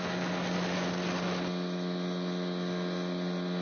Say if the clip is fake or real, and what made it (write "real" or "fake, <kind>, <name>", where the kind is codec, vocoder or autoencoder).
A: real